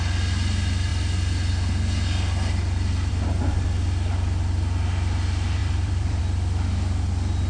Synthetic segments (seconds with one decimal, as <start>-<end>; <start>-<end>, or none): 5.6-6.2